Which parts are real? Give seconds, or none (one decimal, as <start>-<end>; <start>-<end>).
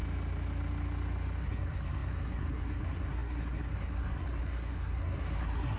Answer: 0.0-1.4